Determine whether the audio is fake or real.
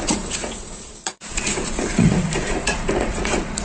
fake